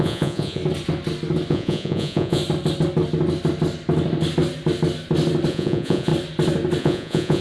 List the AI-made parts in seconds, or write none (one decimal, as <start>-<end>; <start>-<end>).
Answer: 0.0-0.6; 1.5-2.4; 5.5-6.1; 6.8-7.4